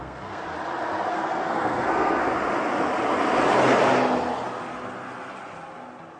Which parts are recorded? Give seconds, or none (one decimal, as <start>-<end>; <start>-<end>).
0.4-1.1; 2.2-6.2